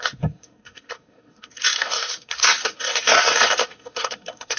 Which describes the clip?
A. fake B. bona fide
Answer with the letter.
A